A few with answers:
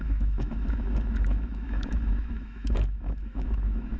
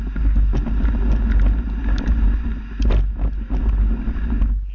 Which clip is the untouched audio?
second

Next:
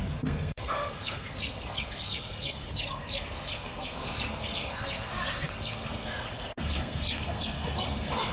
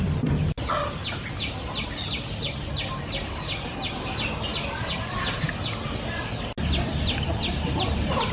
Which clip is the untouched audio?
second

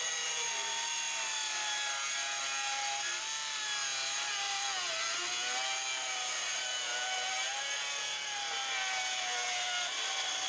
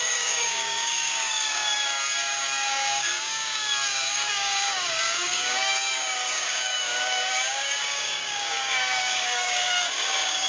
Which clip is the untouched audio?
first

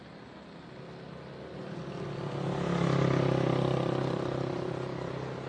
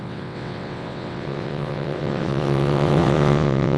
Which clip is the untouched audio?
first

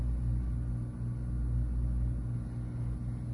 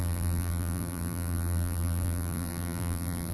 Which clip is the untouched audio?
first